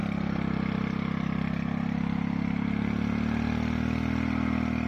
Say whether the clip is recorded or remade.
recorded